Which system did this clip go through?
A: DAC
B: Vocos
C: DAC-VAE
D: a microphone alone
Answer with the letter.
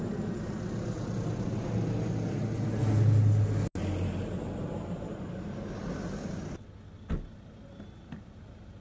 D